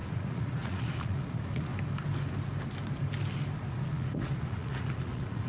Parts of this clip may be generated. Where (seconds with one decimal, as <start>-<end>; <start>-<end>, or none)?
0.0-1.7; 3.7-5.5